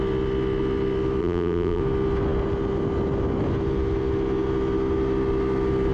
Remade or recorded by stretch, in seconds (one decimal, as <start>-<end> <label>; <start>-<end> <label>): 0.0-1.2 recorded; 1.2-1.8 remade; 1.8-5.9 recorded